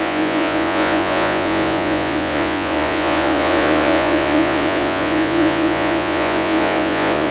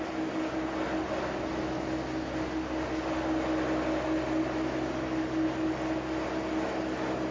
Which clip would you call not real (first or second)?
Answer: first